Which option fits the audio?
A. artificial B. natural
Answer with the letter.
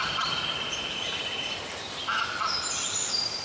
B